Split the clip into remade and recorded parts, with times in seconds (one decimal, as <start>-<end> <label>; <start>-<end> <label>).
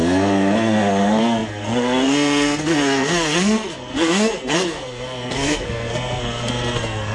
0.0-7.1 remade